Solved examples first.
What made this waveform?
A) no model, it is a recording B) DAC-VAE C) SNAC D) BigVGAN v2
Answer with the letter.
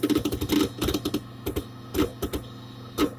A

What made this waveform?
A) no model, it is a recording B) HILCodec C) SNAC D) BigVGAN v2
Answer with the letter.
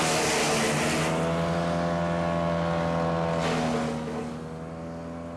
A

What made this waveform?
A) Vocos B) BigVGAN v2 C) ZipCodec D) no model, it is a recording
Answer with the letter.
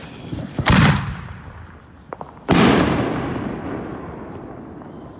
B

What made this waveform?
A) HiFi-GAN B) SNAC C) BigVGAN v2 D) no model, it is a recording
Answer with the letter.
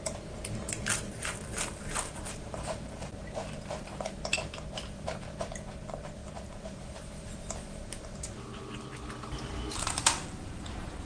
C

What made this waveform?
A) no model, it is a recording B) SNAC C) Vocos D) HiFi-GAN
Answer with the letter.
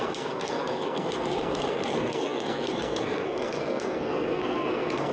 B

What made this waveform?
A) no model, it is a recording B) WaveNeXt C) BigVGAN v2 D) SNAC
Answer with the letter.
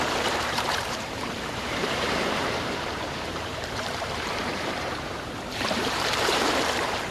C